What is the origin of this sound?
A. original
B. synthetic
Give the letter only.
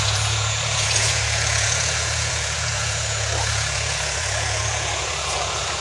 B